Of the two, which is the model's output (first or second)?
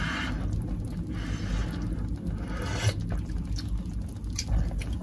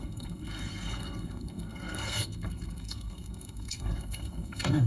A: second